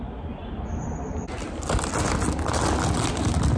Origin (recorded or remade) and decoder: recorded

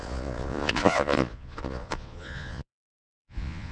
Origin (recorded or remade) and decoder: remade, vocoder, Vocos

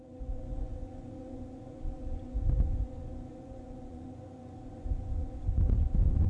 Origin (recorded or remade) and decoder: remade, vocoder, Vocos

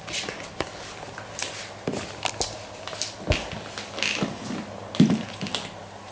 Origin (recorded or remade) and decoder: recorded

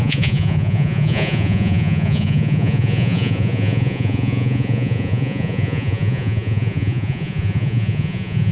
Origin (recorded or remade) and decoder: remade, vocoder, Vocos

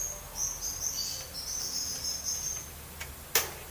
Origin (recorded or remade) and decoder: recorded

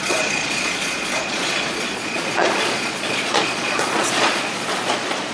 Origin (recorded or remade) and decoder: remade, vocoder, Vocos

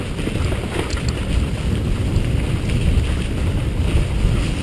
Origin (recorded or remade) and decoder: recorded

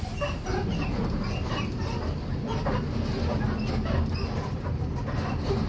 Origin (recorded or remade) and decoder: recorded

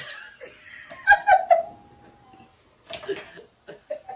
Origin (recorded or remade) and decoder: recorded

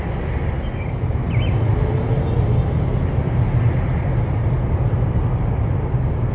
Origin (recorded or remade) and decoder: recorded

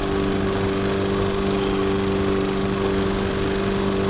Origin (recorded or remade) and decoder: recorded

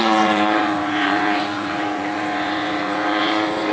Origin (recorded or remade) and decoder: remade, vocoder, Vocos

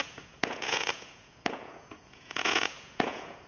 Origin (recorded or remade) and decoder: remade, vocoder, Vocos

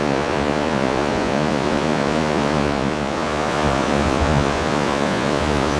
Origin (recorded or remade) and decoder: remade, vocoder, Vocos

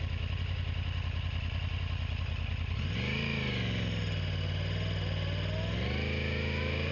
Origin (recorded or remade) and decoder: recorded